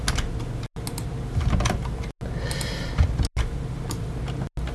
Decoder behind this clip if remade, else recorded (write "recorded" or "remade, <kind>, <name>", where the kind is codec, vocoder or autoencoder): recorded